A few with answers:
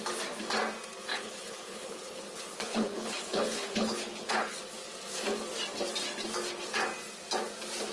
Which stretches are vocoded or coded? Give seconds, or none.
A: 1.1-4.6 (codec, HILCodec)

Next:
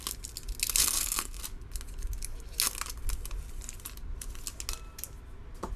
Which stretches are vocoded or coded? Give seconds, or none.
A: 0.8-1.4 (codec, SNAC)

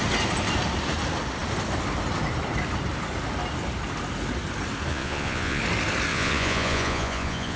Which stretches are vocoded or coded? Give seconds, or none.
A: 4.9-5.6 (vocoder, Vocos); 6.1-7.6

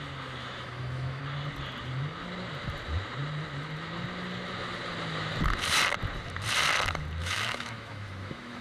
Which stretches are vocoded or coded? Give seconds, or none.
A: 0.4-1.2 (autoencoder, DAC-VAE); 7.2-8.6

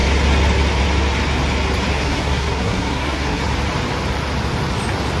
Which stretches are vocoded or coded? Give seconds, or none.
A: 1.9-3.4 (codec, SNAC)